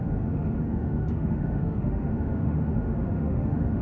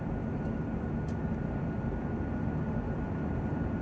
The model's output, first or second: first